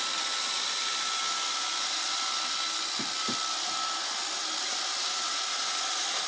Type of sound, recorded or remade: recorded